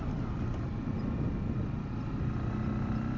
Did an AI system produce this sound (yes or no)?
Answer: yes